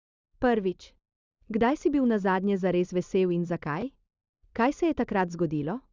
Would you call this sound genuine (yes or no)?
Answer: yes